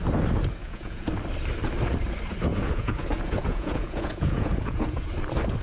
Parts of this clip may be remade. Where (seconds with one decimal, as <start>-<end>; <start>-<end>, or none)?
0.6-1.1; 2.5-5.1